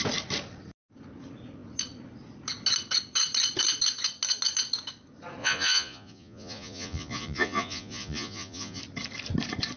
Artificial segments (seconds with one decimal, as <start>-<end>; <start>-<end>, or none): 5.4-8.8